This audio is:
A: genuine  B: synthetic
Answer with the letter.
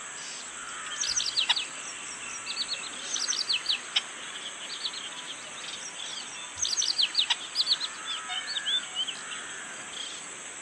A